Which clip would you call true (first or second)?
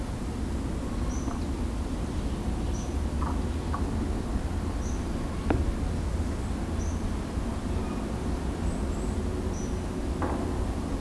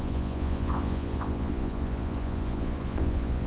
first